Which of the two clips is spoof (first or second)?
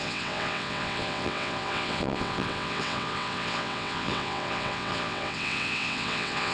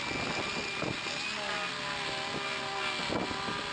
first